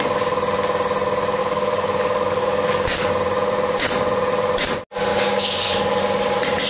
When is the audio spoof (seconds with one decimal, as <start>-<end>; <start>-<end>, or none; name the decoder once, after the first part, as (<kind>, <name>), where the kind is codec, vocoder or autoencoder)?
1.4-3.0 (codec, DAC); 5.1-6.0